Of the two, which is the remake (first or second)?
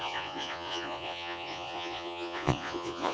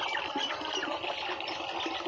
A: first